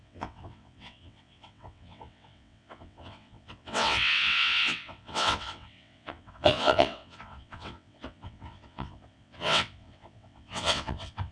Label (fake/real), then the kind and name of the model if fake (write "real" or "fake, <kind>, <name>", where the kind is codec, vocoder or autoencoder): fake, vocoder, WaveNeXt